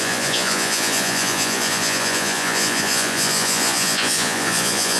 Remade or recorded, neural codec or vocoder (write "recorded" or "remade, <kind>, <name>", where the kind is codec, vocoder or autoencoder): remade, vocoder, Vocos